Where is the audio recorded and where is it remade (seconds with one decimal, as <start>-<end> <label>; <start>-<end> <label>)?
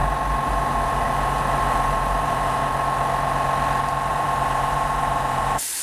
0.0-0.5 recorded; 0.5-2.6 remade; 2.6-4.1 recorded; 4.1-5.8 remade